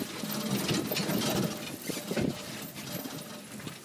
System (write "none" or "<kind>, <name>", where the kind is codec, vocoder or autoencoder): none